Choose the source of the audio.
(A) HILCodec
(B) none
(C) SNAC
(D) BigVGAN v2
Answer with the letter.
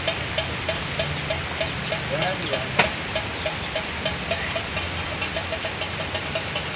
D